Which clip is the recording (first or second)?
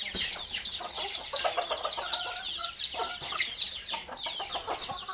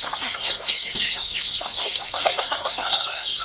first